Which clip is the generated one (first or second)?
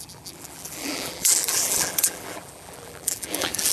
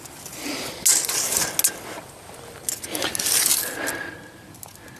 first